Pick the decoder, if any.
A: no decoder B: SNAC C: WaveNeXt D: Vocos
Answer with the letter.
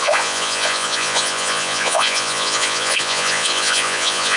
D